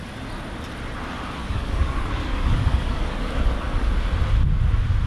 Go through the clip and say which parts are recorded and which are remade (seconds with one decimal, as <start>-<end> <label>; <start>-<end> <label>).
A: 0.0-1.4 recorded; 1.4-3.9 remade; 3.9-5.1 recorded